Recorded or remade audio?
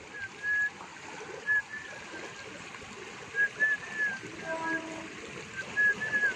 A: recorded